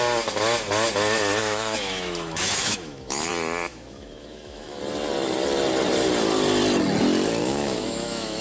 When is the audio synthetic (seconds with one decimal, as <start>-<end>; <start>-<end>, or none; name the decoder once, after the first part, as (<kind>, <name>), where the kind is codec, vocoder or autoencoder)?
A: 1.4-3.3 (autoencoder, DAC-VAE); 3.7-4.8; 7.4-8.4